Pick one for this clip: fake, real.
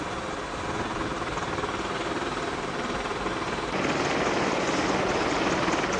real